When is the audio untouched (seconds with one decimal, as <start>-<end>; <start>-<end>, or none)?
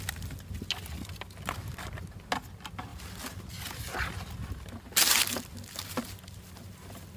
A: 0.0-7.2